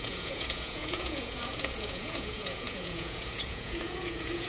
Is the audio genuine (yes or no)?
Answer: no